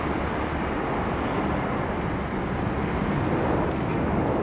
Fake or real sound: real